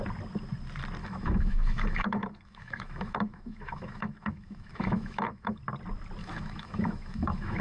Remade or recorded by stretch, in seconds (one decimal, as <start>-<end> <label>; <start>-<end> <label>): 0.0-1.0 recorded; 1.0-5.6 remade; 5.6-6.2 recorded; 6.2-7.6 remade